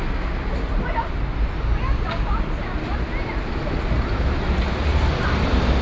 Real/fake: real